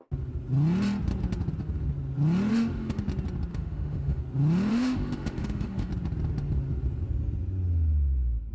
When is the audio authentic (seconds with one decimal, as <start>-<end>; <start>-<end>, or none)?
0.0-2.5; 3.0-3.5; 4.2-4.7; 5.9-8.5